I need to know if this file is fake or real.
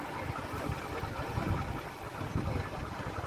real